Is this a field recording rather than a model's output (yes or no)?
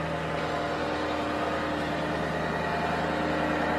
yes